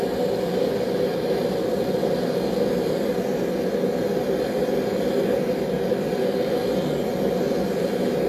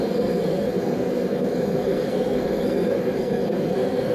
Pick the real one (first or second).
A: first